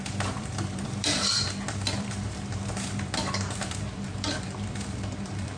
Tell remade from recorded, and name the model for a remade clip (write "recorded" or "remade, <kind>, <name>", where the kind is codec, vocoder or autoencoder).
remade, vocoder, BigVGAN v2